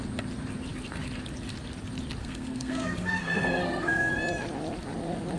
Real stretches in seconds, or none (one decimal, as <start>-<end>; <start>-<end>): 0.0-2.2; 4.1-5.4